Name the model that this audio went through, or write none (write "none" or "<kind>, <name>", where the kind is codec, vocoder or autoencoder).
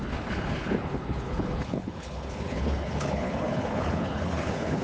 codec, HILCodec